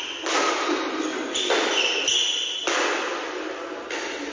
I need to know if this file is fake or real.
real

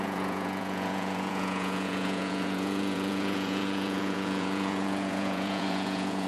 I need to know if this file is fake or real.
fake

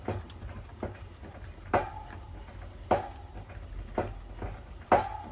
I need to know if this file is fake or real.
real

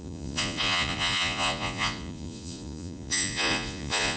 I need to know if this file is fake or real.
fake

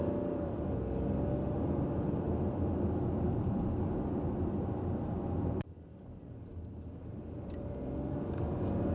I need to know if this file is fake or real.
real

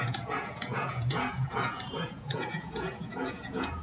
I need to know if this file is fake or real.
fake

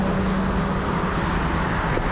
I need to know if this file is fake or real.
real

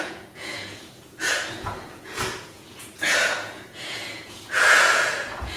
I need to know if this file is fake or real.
fake